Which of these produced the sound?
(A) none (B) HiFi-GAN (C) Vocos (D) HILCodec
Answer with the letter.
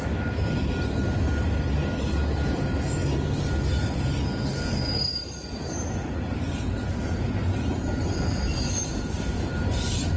A